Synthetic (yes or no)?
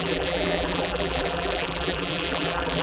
yes